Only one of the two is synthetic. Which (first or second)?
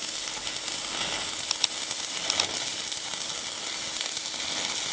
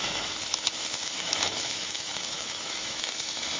second